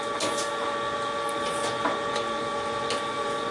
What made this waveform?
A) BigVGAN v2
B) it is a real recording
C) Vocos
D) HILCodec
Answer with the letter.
B